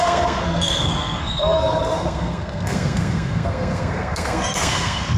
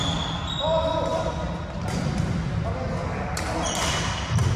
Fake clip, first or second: first